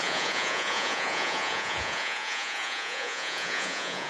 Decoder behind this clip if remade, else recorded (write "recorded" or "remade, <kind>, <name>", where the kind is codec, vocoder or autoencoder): remade, vocoder, Vocos